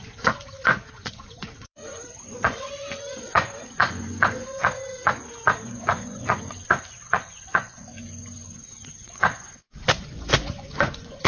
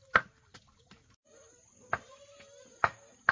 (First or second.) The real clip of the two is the second